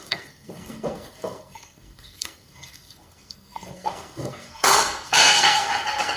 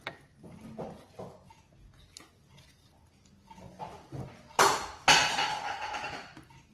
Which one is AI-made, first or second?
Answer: first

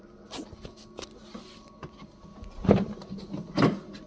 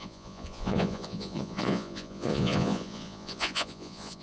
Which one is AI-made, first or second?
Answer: second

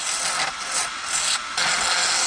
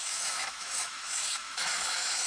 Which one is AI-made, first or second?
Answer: second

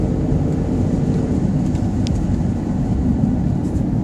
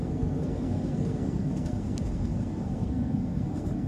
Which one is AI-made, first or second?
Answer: second